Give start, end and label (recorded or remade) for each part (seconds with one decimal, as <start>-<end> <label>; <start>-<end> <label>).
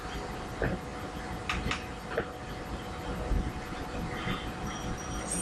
0.0-5.4 recorded